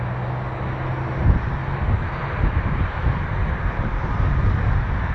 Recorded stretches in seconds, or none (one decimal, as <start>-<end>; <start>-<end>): 0.0-1.6

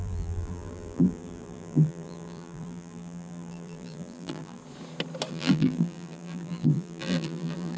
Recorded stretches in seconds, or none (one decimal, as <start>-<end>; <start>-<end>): 4.6-5.3

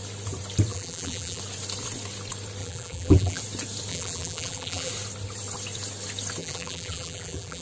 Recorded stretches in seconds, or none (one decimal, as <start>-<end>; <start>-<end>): 0.0-0.7; 1.4-2.6; 3.4-3.9; 4.9-6.4

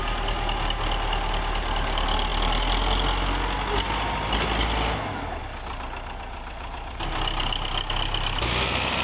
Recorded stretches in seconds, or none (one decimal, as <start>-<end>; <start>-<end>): 0.0-9.0

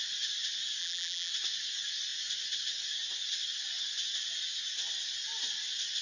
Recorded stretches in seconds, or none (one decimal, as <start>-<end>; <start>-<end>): 0.0-0.8; 1.3-6.0

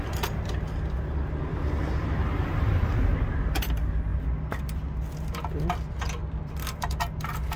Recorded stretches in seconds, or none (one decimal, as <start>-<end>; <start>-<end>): 0.0-1.5; 3.4-7.6

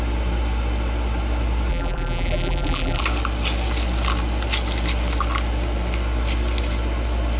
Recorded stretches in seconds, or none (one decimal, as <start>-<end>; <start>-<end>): 0.0-1.7; 3.0-7.4